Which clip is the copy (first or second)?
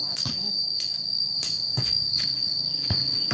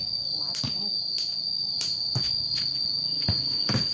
first